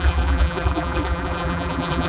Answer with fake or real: fake